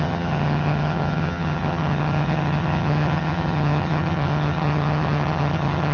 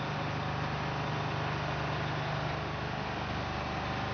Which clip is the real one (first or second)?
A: second